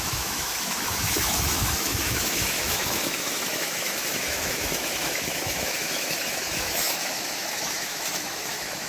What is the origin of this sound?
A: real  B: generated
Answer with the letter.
B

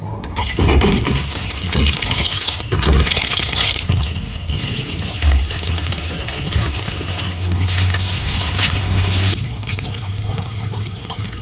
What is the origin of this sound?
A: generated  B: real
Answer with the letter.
A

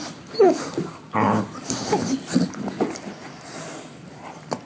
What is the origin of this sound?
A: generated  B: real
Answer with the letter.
B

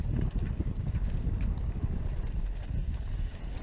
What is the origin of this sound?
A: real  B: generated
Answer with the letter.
A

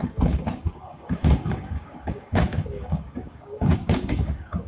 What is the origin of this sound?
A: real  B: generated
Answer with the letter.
B